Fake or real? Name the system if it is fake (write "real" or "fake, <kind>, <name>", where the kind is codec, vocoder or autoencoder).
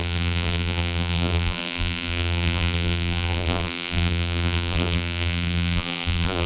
fake, vocoder, BigVGAN v2